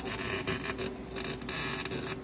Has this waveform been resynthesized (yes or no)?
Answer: no